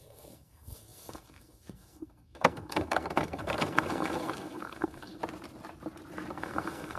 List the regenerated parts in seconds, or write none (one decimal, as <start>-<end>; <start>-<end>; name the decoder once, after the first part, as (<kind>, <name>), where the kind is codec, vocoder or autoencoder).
0.0-5.2 (codec, SNAC); 6.3-7.0